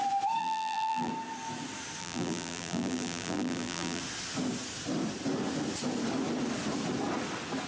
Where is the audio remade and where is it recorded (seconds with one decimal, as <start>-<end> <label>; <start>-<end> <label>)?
0.0-0.4 recorded; 0.4-1.1 remade; 1.1-2.0 recorded; 2.0-4.0 remade; 4.0-7.7 recorded

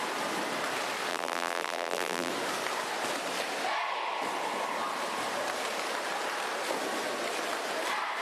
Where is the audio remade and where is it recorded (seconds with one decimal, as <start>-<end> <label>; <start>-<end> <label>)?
0.0-1.1 recorded; 1.1-2.3 remade; 2.3-8.2 recorded

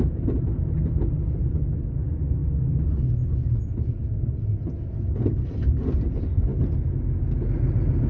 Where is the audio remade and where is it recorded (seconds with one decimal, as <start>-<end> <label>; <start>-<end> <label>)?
0.0-8.1 recorded

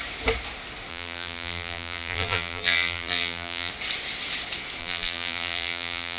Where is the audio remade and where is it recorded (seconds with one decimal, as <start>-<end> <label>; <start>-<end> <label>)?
0.0-0.9 recorded; 0.9-3.7 remade; 3.7-4.8 recorded; 4.8-6.2 remade